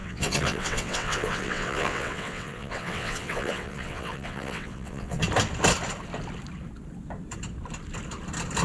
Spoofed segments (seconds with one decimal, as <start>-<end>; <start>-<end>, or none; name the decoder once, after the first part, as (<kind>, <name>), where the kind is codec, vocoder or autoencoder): 0.0-5.2 (vocoder, WaveNeXt)